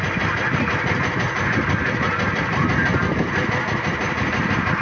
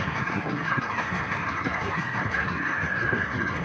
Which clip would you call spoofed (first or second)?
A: second